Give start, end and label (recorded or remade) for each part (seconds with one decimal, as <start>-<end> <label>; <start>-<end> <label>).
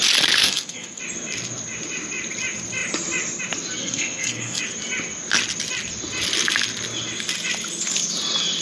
0.0-0.4 recorded; 0.4-1.0 remade; 1.0-3.8 recorded; 3.8-4.6 remade; 4.6-8.6 recorded